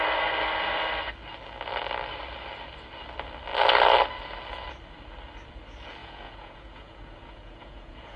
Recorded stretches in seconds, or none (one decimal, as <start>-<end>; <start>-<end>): 0.0-6.0